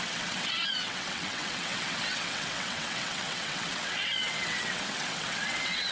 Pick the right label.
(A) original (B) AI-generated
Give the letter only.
B